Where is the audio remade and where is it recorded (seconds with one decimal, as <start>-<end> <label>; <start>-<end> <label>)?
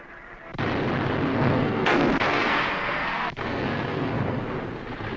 0.0-1.3 recorded; 1.3-4.4 remade; 4.4-5.2 recorded